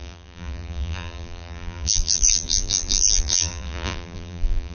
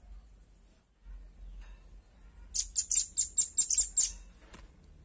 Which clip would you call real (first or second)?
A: second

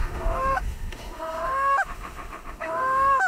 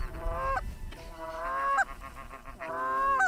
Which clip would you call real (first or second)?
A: second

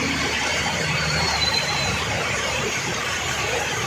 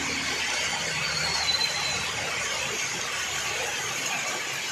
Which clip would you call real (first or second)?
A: second